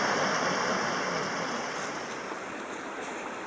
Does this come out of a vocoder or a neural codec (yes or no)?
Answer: no